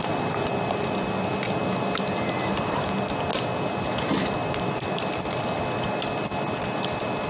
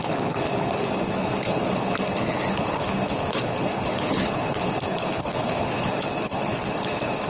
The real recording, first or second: first